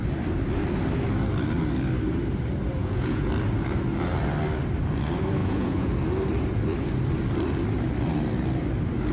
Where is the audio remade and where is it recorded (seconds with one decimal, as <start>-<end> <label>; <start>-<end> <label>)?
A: 0.0-2.8 recorded; 2.8-3.3 remade; 3.3-5.4 recorded; 5.4-5.9 remade; 5.9-9.1 recorded